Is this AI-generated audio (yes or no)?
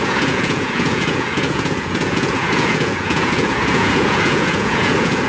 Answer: yes